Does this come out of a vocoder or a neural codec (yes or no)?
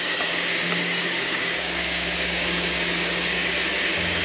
yes